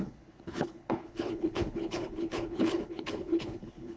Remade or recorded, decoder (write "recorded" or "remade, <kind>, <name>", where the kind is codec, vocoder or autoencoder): remade, codec, HILCodec